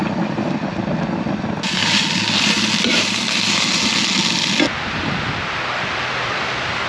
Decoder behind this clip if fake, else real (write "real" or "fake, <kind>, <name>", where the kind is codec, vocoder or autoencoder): real